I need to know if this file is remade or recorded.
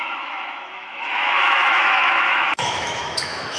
remade